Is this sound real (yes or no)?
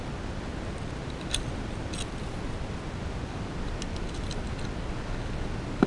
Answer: yes